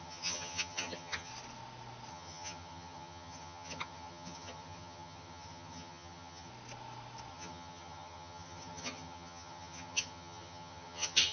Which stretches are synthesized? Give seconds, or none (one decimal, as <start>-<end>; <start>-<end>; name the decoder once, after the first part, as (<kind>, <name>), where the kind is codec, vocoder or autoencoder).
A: 0.0-1.3 (vocoder, HiFi-GAN); 2.1-6.5; 7.3-11.3